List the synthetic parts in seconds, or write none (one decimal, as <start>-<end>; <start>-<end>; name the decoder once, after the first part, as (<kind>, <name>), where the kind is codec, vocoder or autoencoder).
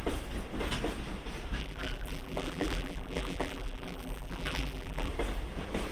1.6-5.1 (vocoder, BigVGAN v2)